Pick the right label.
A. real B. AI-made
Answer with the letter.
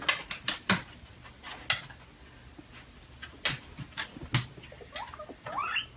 A